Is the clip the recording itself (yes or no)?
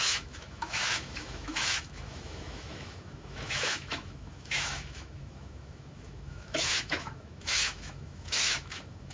no